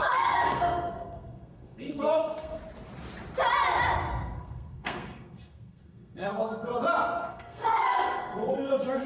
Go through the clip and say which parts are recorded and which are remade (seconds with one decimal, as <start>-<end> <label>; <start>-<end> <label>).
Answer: 0.0-2.6 remade; 2.6-4.1 recorded; 4.1-6.7 remade; 6.7-7.3 recorded; 7.3-9.1 remade